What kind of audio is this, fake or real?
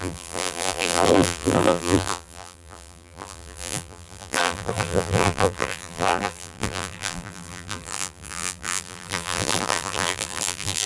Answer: fake